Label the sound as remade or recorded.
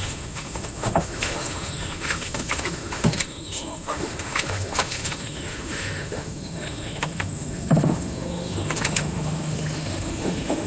remade